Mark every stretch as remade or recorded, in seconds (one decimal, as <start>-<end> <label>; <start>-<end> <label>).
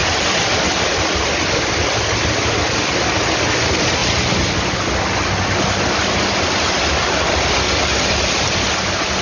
0.0-9.2 recorded